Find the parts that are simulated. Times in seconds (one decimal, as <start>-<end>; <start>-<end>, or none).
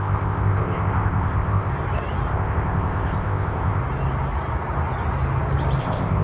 0.0-1.7; 2.3-3.8; 5.8-6.2